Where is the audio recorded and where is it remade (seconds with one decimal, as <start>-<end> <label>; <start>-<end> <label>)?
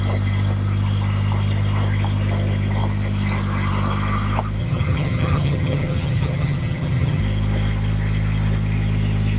0.0-4.6 recorded; 4.6-7.2 remade; 7.2-9.4 recorded